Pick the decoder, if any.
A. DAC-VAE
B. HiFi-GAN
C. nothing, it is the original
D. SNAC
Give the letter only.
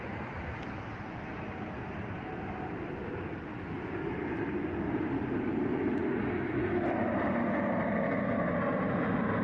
C